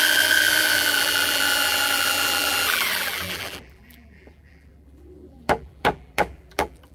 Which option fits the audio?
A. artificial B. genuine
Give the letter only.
A